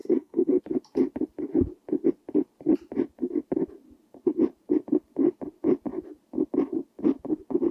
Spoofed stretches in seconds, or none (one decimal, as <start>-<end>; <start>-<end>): 0.0-0.6